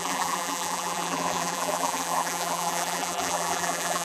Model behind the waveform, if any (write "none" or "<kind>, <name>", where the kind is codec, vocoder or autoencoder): vocoder, BigVGAN v2